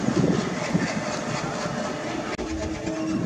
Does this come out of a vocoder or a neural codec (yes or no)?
no